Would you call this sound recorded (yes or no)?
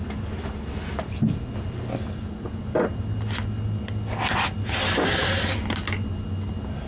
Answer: yes